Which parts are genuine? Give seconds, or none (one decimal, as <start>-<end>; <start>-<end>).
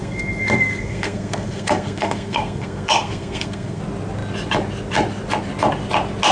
3.8-6.3